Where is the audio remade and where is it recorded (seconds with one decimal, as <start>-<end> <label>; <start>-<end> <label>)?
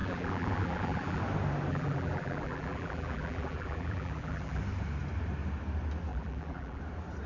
0.0-1.2 remade; 1.2-1.7 recorded; 1.7-4.6 remade; 4.6-6.1 recorded; 6.1-6.8 remade; 6.8-7.3 recorded